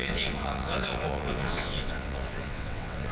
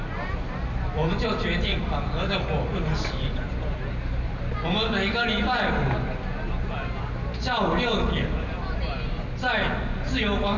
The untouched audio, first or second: second